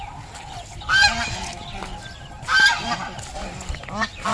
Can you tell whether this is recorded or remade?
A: recorded